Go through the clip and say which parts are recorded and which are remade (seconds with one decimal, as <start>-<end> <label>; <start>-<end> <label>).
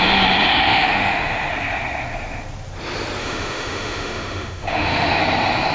0.0-0.5 recorded; 0.5-1.5 remade; 1.5-3.2 recorded; 3.2-5.2 remade; 5.2-5.7 recorded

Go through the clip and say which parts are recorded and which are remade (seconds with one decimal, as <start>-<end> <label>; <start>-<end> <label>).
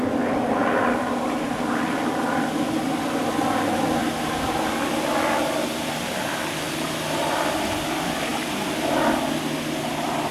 0.0-10.3 recorded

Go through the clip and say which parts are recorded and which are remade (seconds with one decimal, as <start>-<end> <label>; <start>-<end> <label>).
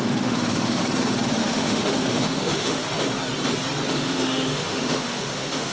0.0-0.8 remade; 0.8-1.4 recorded; 1.4-2.8 remade; 2.8-3.9 recorded; 3.9-5.7 remade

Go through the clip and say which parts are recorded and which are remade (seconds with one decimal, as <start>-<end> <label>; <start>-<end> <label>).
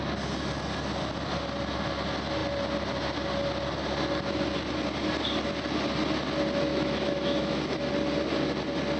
0.0-6.7 recorded; 6.7-7.9 remade; 7.9-9.0 recorded